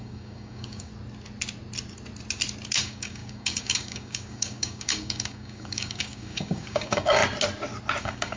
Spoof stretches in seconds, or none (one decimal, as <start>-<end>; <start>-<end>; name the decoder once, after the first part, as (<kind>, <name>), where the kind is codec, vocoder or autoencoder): 0.0-0.9 (codec, DAC); 2.8-7.2; 8.0-8.4